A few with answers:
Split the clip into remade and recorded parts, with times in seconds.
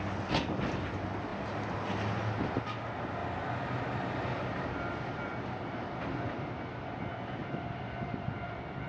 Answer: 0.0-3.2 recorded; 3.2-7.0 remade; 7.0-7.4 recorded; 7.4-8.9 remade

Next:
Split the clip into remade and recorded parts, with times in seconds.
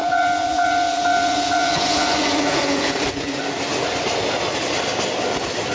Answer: 0.0-3.4 remade; 3.4-5.7 recorded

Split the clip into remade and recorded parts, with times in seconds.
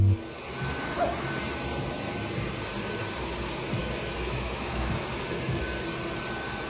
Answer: 0.0-3.8 recorded; 3.8-4.9 remade; 4.9-6.7 recorded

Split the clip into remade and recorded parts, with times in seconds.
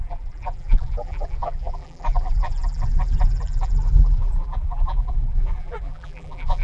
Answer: 0.0-6.6 remade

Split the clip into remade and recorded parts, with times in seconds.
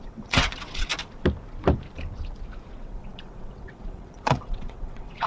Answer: 0.0-0.9 remade; 0.9-2.7 recorded; 2.7-5.3 remade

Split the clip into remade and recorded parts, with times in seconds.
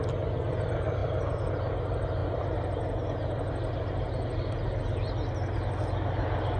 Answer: 0.0-6.6 recorded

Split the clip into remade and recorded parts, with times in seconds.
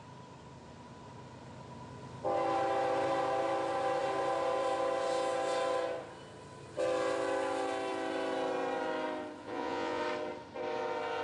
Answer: 0.0-9.4 recorded; 9.4-10.0 remade; 10.0-11.2 recorded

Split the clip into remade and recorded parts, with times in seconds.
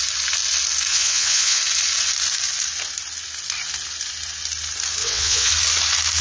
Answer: 0.0-0.9 recorded; 0.9-1.6 remade; 1.6-5.0 recorded; 5.0-5.5 remade; 5.5-6.2 recorded